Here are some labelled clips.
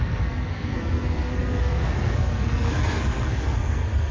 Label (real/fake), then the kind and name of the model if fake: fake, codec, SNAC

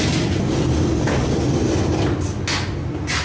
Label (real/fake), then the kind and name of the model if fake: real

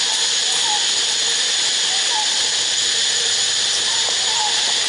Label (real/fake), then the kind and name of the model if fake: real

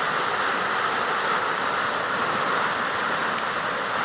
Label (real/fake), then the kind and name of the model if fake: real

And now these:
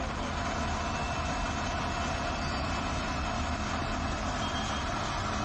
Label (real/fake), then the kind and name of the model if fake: real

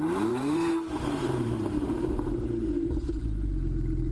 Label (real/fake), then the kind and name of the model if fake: fake, vocoder, BigVGAN v2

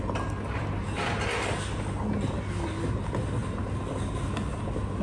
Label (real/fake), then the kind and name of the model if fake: real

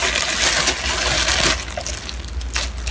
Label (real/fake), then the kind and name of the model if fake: real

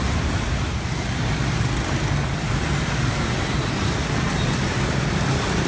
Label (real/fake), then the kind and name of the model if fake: fake, vocoder, BigVGAN v2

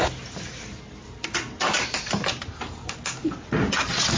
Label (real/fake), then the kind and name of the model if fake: real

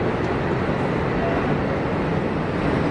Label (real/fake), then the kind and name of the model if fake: fake, vocoder, BigVGAN v2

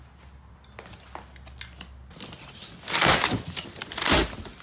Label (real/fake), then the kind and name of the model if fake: real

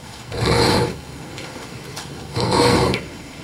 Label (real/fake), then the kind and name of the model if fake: fake, codec, SNAC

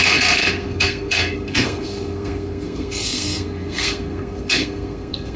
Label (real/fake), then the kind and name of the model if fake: fake, codec, SNAC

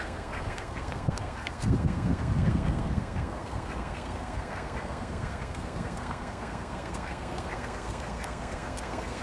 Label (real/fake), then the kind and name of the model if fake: fake, codec, SNAC